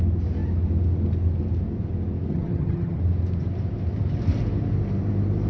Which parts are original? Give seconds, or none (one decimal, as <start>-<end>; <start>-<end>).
0.0-2.3; 3.0-5.5

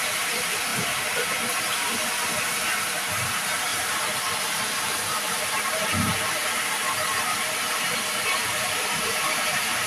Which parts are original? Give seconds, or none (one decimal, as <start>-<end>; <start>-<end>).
0.7-2.4; 3.7-4.4; 6.8-8.4

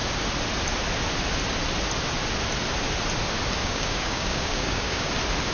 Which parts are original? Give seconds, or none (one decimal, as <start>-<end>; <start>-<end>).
0.0-3.6; 5.1-5.5

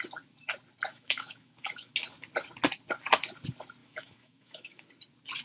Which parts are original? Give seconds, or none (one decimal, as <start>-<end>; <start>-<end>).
0.0-0.9; 1.9-3.8; 4.9-5.4

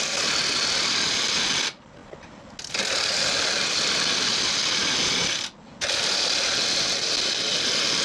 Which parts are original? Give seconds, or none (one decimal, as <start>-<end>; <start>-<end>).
0.0-8.0

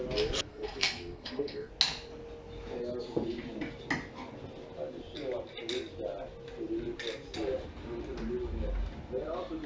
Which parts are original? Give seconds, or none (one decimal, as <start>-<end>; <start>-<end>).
0.0-0.5; 1.7-9.7

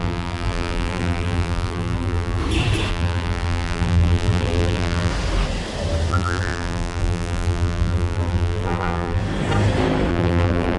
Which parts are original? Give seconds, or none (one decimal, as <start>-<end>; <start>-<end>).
2.4-2.9; 5.1-6.1; 9.2-10.1